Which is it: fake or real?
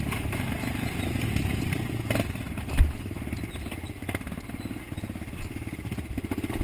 real